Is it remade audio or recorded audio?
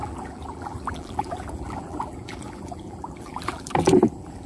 remade